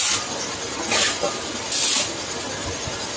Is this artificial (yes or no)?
no